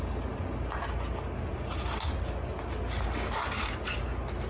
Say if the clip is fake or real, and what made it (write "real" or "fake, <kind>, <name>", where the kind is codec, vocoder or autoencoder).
real